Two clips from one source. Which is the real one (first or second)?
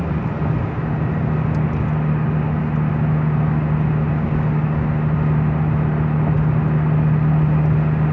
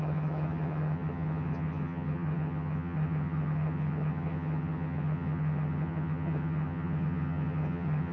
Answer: first